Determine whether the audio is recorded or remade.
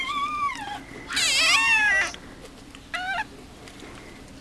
recorded